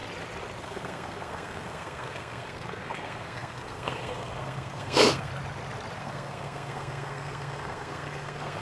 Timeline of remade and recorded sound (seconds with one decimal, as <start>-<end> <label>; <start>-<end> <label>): 0.0-0.6 recorded; 0.6-5.3 remade; 5.3-6.0 recorded; 6.0-8.6 remade